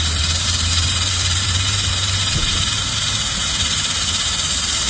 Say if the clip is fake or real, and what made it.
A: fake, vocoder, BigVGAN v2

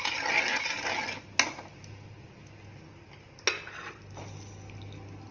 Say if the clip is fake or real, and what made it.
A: real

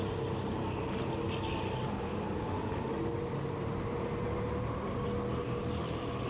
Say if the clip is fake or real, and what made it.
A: real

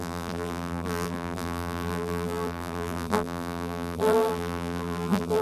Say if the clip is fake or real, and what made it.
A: fake, vocoder, BigVGAN v2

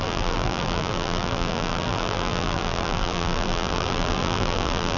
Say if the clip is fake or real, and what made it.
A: fake, vocoder, BigVGAN v2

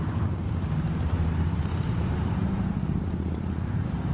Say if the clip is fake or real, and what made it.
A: fake, vocoder, BigVGAN v2